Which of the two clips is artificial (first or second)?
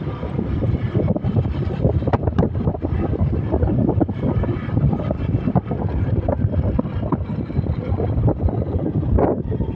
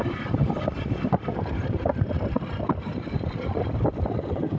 second